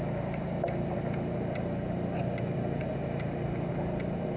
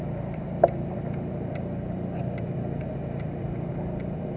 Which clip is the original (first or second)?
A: first